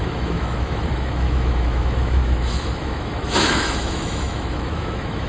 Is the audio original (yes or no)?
no